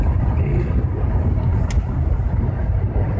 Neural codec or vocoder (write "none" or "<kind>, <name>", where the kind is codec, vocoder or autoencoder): none